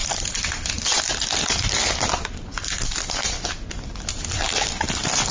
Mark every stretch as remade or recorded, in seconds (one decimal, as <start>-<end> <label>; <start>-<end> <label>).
0.0-1.5 remade; 1.5-2.5 recorded; 2.5-3.7 remade; 3.7-5.3 recorded